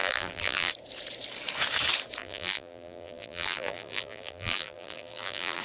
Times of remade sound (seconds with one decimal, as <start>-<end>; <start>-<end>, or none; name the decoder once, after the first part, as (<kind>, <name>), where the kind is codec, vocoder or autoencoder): 0.0-0.7 (vocoder, BigVGAN v2); 2.2-5.6